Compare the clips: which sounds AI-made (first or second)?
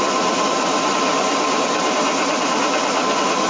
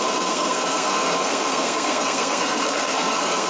second